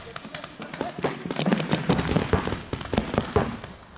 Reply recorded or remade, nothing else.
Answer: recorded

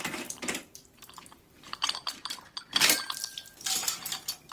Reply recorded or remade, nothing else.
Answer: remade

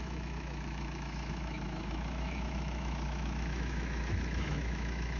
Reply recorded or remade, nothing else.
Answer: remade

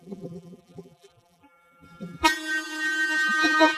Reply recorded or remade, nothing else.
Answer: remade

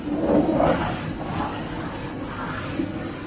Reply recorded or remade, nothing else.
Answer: recorded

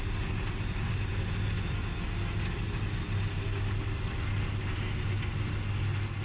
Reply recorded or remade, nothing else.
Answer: recorded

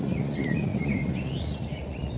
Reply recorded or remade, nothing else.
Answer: remade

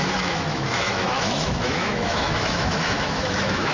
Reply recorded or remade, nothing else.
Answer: remade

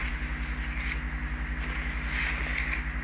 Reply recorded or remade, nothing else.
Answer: recorded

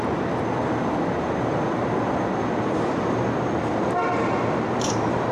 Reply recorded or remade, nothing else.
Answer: recorded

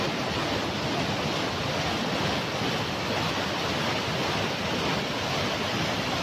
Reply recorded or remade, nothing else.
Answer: recorded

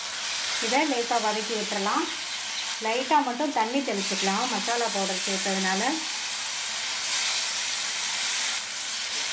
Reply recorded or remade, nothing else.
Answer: recorded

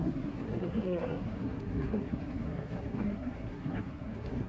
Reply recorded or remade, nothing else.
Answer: remade